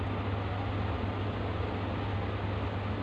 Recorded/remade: recorded